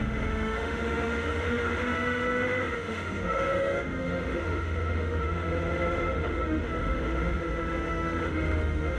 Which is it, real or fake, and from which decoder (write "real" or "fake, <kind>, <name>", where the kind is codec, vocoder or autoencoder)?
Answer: fake, autoencoder, DAC-VAE